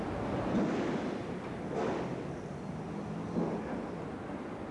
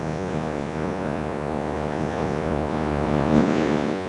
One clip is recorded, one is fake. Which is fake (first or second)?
second